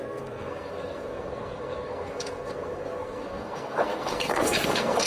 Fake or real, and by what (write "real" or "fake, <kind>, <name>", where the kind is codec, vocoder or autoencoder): fake, codec, SNAC